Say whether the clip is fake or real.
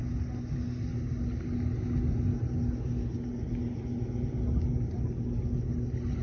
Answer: real